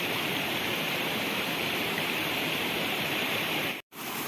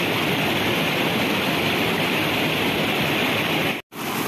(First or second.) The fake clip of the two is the first